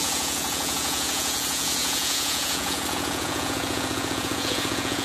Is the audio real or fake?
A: fake